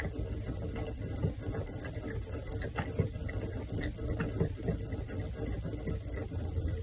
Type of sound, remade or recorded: recorded